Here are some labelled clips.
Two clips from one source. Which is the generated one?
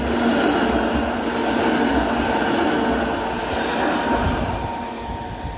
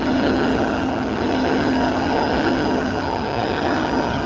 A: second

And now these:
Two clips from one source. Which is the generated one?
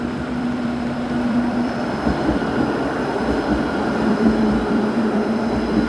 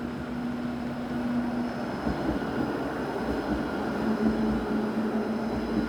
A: first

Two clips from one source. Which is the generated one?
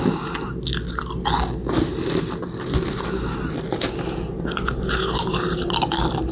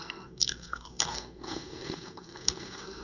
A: second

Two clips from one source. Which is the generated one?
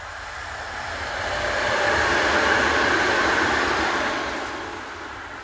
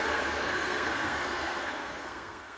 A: second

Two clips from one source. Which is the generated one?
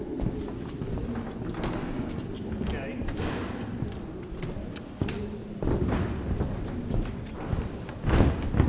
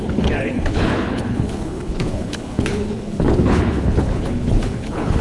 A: second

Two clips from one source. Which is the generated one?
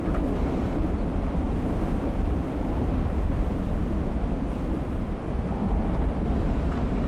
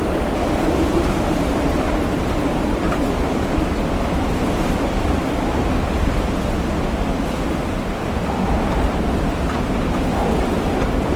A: second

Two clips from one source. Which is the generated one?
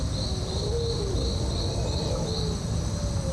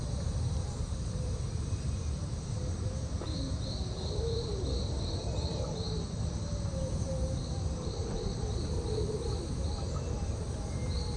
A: second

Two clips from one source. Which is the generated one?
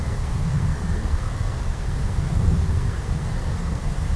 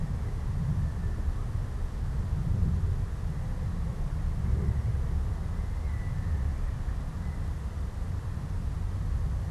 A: first